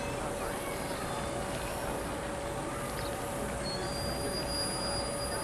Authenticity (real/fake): real